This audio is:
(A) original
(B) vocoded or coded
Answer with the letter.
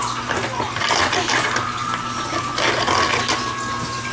A